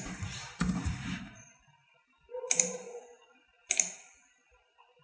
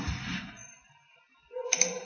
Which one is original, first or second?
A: second